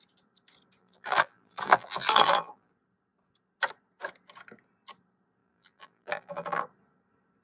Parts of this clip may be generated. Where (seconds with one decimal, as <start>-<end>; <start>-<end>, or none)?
0.8-2.7; 5.4-6.6

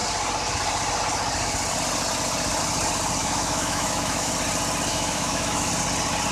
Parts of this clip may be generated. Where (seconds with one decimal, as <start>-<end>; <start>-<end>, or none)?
3.2-4.3; 4.9-5.7

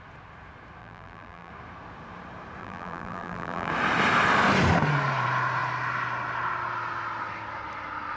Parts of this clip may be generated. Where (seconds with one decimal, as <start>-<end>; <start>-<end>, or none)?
0.8-1.5; 2.6-3.7

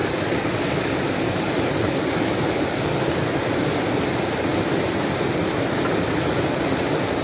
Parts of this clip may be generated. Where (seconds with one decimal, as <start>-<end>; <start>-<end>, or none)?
0.0-2.9

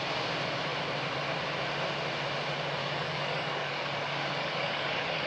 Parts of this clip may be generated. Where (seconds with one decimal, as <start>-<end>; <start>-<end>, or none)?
2.8-5.3

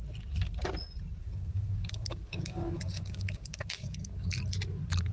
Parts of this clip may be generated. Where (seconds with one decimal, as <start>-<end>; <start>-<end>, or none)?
1.2-4.3

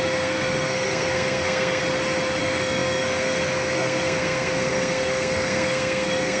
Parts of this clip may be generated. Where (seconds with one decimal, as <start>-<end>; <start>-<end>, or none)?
0.0-1.8; 2.4-6.4

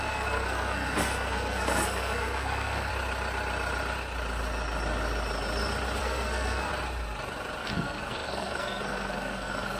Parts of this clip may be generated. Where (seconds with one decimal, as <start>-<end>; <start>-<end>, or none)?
0.0-2.9; 6.0-6.7; 7.6-9.8